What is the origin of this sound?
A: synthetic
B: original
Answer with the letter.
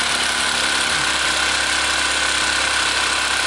B